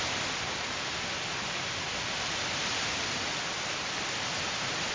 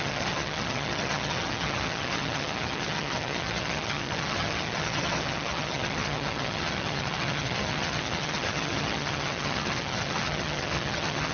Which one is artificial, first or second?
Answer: second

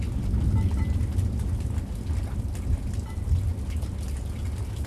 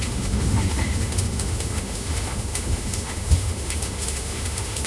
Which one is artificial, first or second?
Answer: second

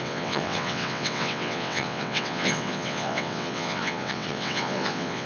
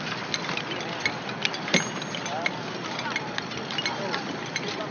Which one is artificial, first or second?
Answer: first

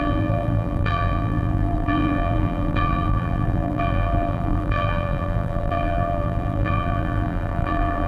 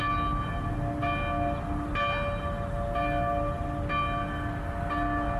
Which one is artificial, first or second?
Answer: first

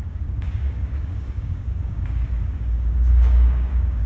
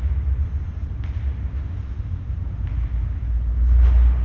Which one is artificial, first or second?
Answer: first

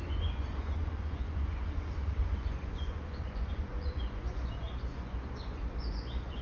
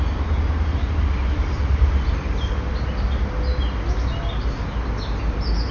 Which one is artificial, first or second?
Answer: first